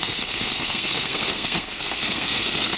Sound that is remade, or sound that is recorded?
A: remade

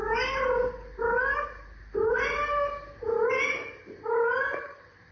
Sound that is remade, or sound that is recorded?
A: recorded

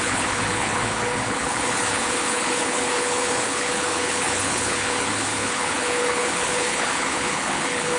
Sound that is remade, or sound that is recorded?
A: remade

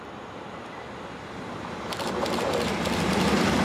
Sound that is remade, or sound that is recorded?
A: recorded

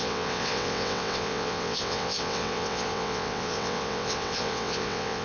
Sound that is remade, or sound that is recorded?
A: remade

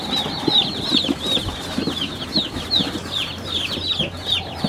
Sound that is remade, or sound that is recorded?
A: recorded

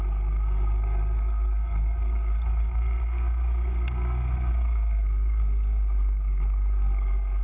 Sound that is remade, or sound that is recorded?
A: remade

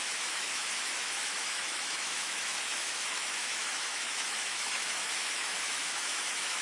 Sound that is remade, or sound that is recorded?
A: remade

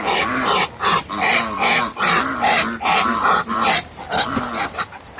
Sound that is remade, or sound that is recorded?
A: recorded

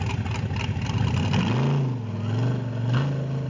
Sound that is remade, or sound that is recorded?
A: recorded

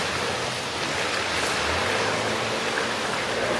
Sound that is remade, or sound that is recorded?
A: recorded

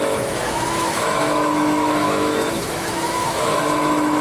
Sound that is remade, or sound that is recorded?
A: remade